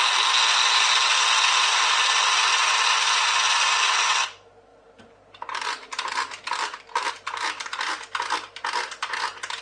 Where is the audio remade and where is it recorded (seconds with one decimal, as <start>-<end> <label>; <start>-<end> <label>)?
0.0-9.6 recorded

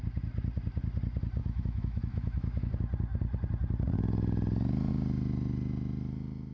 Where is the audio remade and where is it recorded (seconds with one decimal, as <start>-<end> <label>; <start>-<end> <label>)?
0.0-1.4 recorded; 1.4-2.7 remade; 2.7-6.5 recorded

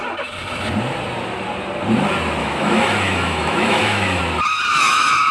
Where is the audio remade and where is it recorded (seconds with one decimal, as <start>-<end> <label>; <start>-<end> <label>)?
0.0-2.4 recorded; 2.4-4.2 remade; 4.2-4.7 recorded; 4.7-5.3 remade

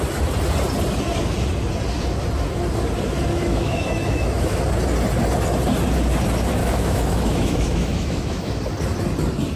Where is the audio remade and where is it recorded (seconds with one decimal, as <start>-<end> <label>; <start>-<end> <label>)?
0.0-3.3 recorded; 3.3-4.6 remade; 4.6-6.6 recorded; 6.6-8.6 remade; 8.6-9.6 recorded

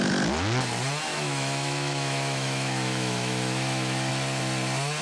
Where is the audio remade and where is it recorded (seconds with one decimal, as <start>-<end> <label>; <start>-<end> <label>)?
0.0-1.1 recorded; 1.1-4.1 remade; 4.1-5.0 recorded

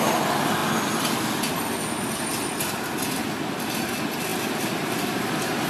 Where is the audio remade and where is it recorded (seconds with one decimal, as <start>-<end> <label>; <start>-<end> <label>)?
0.0-5.7 recorded